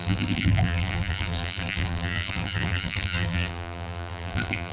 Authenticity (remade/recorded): remade